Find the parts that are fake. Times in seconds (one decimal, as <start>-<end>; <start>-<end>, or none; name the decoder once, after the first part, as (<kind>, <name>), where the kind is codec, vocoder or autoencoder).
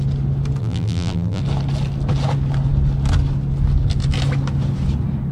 0.6-1.4 (vocoder, BigVGAN v2)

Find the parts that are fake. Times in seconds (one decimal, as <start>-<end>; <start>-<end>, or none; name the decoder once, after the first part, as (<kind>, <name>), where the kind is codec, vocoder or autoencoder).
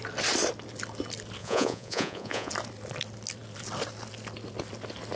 1.4-2.5 (vocoder, Vocos)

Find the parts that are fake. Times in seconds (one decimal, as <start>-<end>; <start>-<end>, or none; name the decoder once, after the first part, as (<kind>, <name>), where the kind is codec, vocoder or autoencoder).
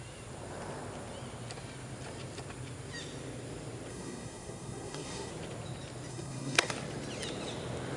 3.9-5.3 (codec, SNAC); 6.1-6.7